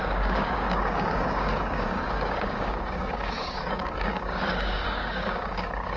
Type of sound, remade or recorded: remade